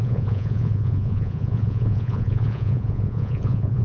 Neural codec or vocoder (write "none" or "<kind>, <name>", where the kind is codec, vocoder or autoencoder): vocoder, Vocos